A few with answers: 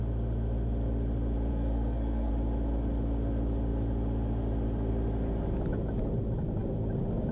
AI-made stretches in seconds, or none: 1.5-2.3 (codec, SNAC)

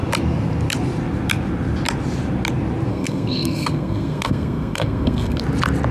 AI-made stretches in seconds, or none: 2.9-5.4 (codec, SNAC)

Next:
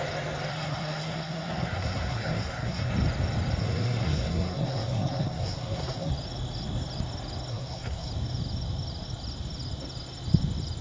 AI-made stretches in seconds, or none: 0.5-2.9 (codec, SNAC); 3.6-6.1; 7.5-8.1

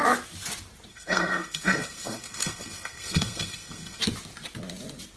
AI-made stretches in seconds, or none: 0.9-4.0 (codec, SNAC)

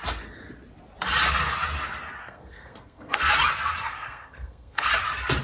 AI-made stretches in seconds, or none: 2.2-3.3 (codec, SNAC); 3.8-4.9